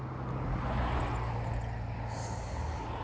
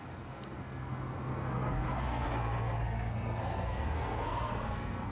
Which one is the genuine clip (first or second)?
first